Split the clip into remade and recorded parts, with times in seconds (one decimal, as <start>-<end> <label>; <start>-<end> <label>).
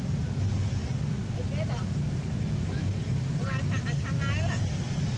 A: 0.0-5.2 recorded